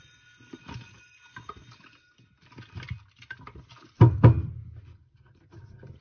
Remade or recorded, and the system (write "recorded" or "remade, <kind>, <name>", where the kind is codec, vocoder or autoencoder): recorded